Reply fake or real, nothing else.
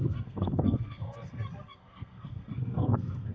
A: fake